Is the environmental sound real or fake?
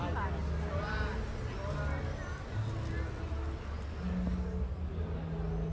real